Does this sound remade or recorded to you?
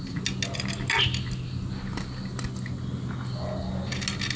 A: recorded